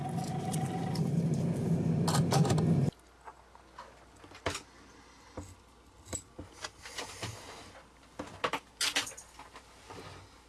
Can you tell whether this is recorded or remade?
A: recorded